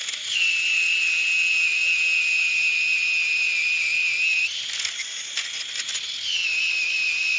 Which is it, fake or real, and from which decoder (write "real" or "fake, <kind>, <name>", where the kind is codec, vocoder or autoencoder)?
real